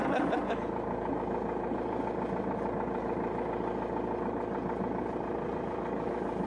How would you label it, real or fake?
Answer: real